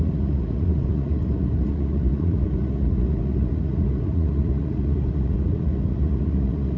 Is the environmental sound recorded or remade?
remade